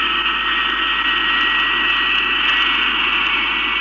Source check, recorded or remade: recorded